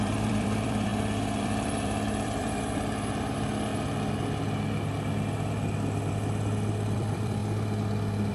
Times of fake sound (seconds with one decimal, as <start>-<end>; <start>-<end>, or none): 0.0-3.7; 6.1-7.4